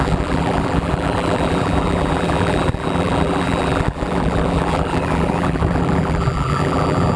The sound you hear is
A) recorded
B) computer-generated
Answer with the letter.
B